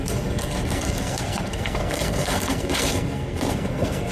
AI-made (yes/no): yes